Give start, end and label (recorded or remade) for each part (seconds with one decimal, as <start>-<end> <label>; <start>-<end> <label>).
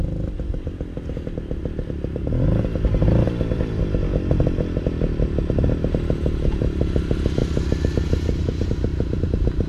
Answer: 0.0-1.6 recorded; 1.6-3.8 remade; 3.8-9.7 recorded